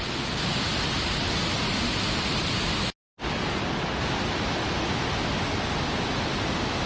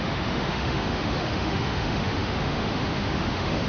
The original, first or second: first